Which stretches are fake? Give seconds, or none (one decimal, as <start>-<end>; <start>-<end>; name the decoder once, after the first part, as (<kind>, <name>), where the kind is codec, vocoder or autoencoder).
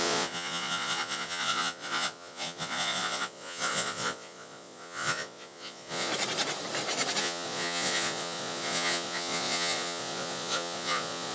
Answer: 0.0-6.1 (vocoder, Vocos); 7.2-11.3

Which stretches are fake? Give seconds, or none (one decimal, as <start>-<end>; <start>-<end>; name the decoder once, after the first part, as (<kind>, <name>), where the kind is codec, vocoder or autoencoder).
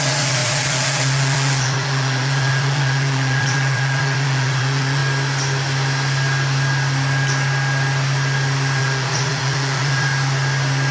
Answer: 0.0-5.0 (vocoder, Vocos); 8.8-10.1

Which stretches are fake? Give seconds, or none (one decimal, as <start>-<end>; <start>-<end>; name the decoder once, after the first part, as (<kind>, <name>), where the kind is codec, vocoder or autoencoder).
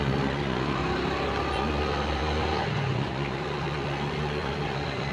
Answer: 0.0-0.8 (vocoder, Vocos); 1.5-5.1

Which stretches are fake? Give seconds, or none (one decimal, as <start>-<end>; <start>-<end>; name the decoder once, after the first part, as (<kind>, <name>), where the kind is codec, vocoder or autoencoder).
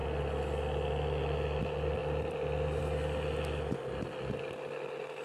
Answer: none